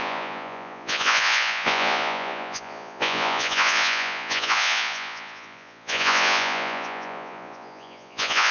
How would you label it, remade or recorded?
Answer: remade